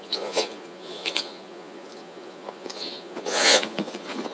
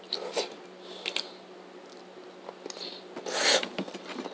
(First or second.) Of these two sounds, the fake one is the first